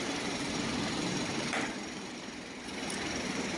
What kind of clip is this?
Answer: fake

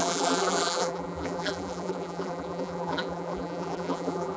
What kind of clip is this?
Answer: fake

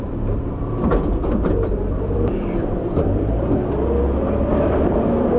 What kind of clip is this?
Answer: fake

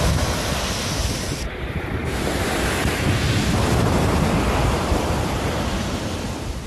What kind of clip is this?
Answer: real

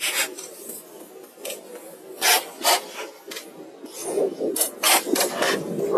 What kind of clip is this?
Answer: real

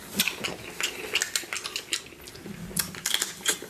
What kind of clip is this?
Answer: real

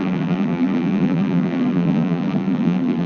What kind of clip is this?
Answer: fake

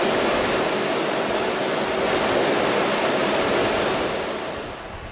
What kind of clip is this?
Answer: real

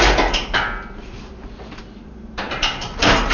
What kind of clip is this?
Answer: fake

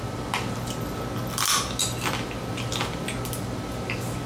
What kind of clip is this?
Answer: real